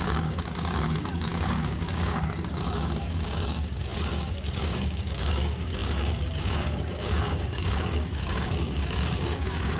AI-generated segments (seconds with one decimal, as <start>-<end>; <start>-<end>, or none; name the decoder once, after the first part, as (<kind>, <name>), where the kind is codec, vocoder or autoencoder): 0.0-9.8 (codec, DAC)